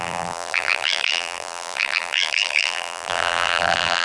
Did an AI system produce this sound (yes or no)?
yes